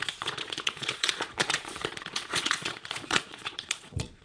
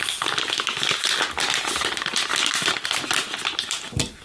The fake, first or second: first